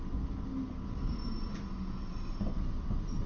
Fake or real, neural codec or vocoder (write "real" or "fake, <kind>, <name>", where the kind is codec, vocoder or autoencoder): real